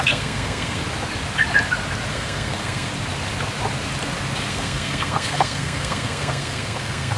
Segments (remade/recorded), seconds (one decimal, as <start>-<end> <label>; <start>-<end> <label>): 0.0-0.8 remade; 0.8-2.1 recorded; 2.1-2.9 remade; 2.9-4.5 recorded; 4.5-7.2 remade